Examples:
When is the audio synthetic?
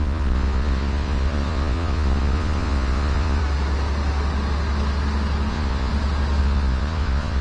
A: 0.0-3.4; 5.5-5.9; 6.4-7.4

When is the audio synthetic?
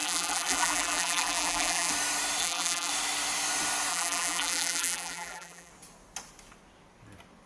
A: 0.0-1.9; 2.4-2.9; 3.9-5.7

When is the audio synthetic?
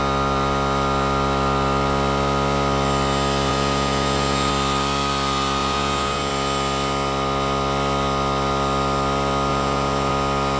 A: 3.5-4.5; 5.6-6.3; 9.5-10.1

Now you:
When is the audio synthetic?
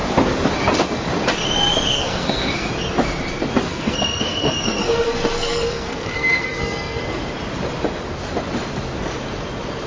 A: 1.9-2.7; 3.7-7.0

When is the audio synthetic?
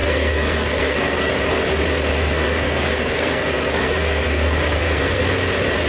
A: 0.0-1.3; 2.1-5.2